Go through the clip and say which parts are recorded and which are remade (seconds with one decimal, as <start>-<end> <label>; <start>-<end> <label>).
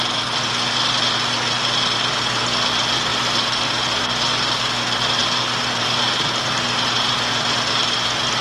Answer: 0.0-3.1 recorded; 3.1-4.0 remade; 4.0-5.2 recorded; 5.2-7.8 remade; 7.8-8.4 recorded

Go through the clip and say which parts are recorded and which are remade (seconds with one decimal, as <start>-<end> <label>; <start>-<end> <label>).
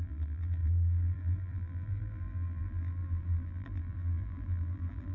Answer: 0.0-5.1 remade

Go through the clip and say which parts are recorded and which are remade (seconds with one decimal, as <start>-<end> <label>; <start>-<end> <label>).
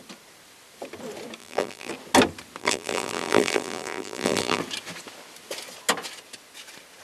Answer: 0.0-1.4 recorded; 1.4-1.9 remade; 1.9-2.6 recorded; 2.6-4.6 remade; 4.6-7.0 recorded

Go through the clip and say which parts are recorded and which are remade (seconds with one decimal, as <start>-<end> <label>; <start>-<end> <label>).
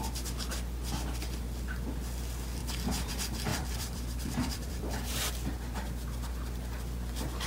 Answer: 0.0-3.5 recorded; 3.5-4.8 remade; 4.8-7.5 recorded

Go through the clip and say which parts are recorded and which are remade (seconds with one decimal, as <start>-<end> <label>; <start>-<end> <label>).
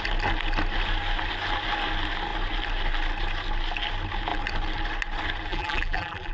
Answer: 0.0-5.5 recorded; 5.5-6.3 remade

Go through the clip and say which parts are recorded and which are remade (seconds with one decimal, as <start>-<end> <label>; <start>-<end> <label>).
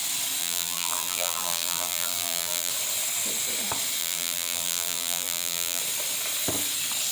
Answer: 0.0-0.4 recorded; 0.4-2.7 remade; 2.7-4.0 recorded; 4.0-5.8 remade; 5.8-7.1 recorded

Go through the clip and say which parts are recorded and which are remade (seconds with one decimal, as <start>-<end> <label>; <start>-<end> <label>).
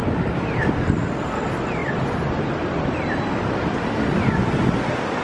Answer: 0.0-0.8 remade; 0.8-5.2 recorded